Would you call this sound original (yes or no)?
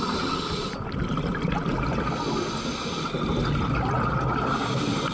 yes